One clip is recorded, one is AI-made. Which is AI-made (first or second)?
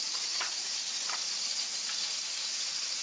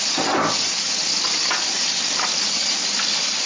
first